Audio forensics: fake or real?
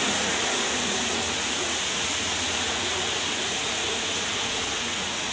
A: fake